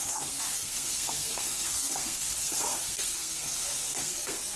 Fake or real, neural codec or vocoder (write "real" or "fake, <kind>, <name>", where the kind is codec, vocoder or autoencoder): fake, codec, SNAC